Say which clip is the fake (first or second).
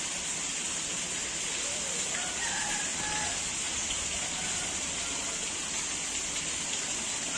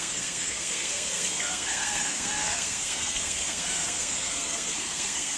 second